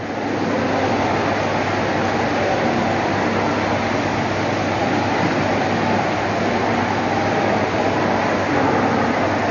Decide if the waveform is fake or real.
real